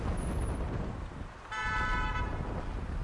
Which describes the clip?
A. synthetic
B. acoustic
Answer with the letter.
B